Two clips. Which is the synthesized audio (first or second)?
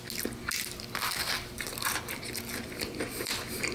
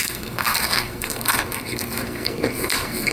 second